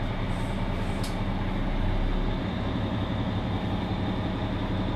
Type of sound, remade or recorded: recorded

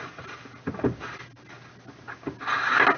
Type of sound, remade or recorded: recorded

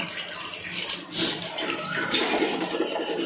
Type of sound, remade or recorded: recorded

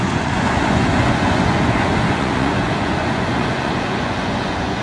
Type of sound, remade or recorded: remade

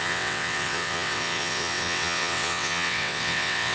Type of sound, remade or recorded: remade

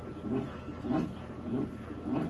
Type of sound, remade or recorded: recorded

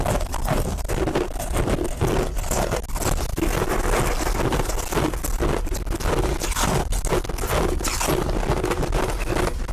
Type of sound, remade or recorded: recorded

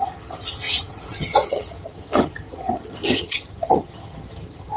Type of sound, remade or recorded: remade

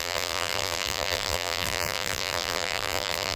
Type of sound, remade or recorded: remade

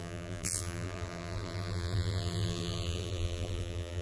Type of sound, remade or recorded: remade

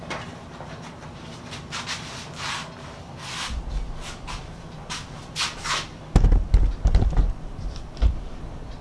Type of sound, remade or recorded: recorded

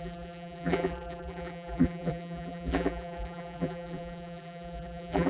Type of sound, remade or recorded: remade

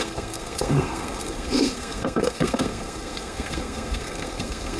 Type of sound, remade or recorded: remade